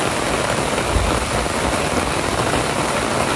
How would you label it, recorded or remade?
recorded